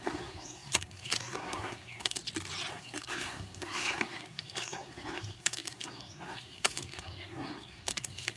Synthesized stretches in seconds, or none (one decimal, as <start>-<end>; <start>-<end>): 0.0-2.2; 2.7-8.4